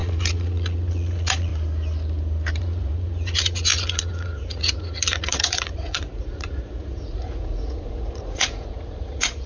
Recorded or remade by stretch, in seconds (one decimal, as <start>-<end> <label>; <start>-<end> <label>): 0.0-1.5 remade; 1.5-2.6 recorded; 2.6-9.5 remade